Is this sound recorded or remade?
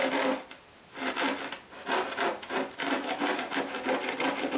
recorded